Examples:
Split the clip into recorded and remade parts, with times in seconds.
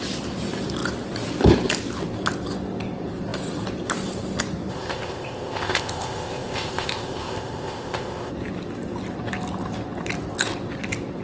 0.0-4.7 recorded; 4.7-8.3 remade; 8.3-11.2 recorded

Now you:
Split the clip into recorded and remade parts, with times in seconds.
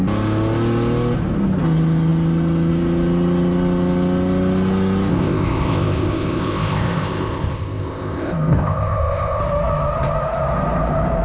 0.0-5.1 recorded; 5.1-9.4 remade; 9.4-11.2 recorded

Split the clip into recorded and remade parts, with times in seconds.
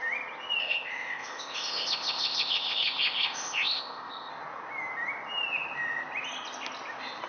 0.0-0.6 recorded; 0.6-4.3 remade; 4.3-7.3 recorded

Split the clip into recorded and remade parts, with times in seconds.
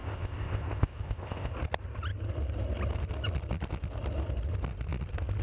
0.0-1.5 remade; 1.5-5.4 recorded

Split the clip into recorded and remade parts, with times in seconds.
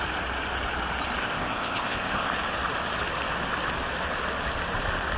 0.0-1.2 recorded; 1.2-2.3 remade; 2.3-5.2 recorded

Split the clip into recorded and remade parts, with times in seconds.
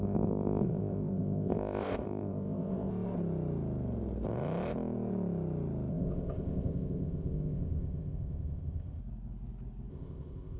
0.0-2.9 remade; 2.9-5.9 recorded; 5.9-9.0 remade; 9.0-9.9 recorded; 9.9-10.6 remade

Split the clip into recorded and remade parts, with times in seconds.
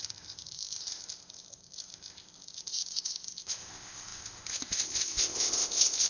0.0-6.1 remade